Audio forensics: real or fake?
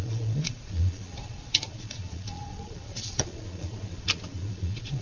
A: fake